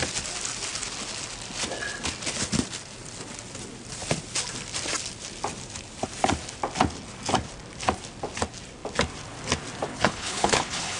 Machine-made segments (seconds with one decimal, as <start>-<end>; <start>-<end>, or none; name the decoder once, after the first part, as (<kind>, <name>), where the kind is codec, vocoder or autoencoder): 9.9-11.0 (codec, HILCodec)